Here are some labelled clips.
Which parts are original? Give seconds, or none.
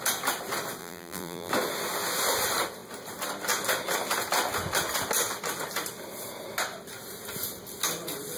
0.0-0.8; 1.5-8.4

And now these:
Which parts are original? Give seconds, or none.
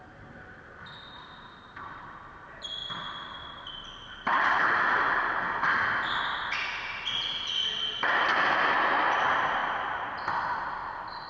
0.0-11.3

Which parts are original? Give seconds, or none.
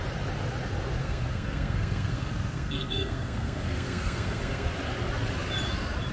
0.0-1.0; 4.7-6.1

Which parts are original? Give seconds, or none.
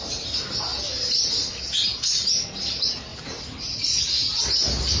0.0-5.0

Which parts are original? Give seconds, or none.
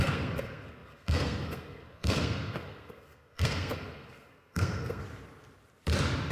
5.0-6.3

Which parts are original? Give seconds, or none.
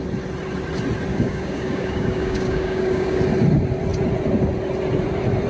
0.0-1.1; 3.2-5.5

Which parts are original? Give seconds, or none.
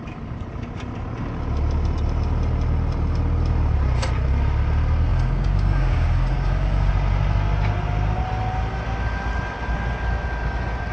0.0-5.1; 6.9-10.9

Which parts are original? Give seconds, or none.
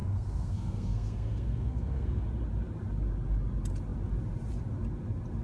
2.2-5.4